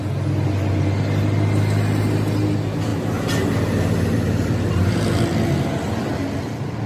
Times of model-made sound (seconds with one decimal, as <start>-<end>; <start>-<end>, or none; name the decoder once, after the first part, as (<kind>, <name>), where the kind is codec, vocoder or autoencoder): none